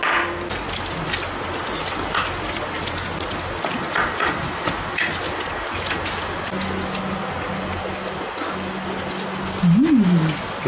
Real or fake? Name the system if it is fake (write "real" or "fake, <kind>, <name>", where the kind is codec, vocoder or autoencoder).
real